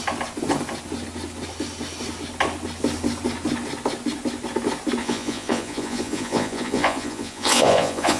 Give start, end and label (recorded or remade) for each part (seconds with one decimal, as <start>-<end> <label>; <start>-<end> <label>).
0.0-5.0 recorded; 5.0-8.2 remade